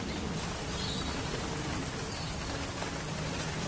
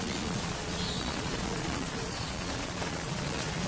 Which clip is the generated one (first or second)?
second